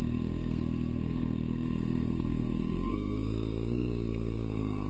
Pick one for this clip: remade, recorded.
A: remade